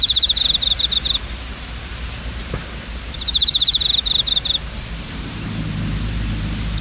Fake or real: real